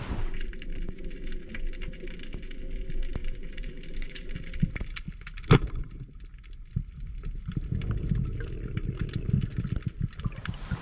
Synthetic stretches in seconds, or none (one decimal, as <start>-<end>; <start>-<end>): 0.5-1.0; 3.2-4.7